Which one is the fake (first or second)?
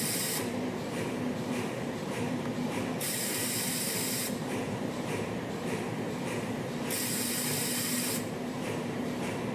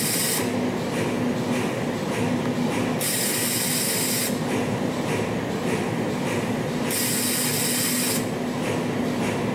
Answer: first